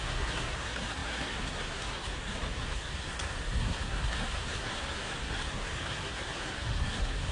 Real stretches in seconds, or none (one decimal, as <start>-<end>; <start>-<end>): none